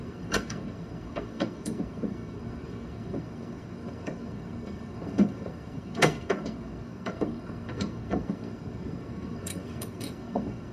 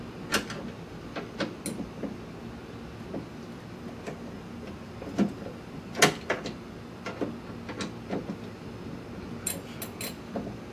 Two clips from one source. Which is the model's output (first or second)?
first